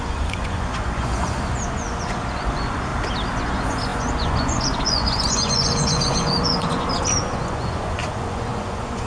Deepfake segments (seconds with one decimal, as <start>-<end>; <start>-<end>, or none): 0.0-2.9; 3.4-9.1